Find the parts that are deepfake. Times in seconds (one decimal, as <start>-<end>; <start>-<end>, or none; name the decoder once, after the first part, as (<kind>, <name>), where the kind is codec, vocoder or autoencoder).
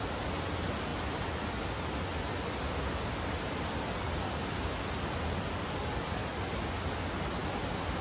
none